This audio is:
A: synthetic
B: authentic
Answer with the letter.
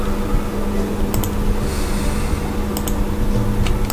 B